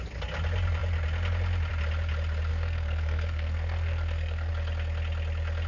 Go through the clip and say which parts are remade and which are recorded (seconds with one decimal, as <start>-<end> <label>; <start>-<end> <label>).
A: 0.0-2.5 recorded; 2.5-4.5 remade; 4.5-5.7 recorded